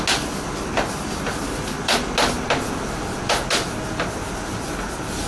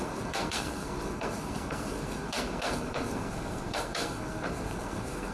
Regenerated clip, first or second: second